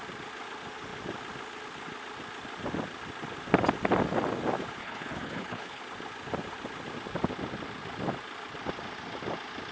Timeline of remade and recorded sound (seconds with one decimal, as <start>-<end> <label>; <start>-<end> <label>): 0.0-4.8 recorded; 4.8-5.8 remade; 5.8-9.7 recorded